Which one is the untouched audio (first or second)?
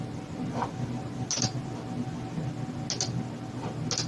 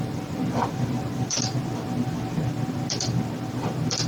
first